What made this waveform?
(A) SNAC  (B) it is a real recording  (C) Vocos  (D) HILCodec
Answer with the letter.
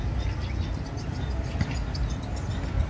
B